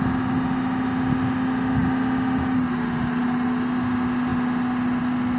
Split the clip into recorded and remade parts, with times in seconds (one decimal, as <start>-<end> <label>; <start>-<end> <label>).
0.0-5.4 recorded